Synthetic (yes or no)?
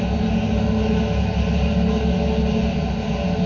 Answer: no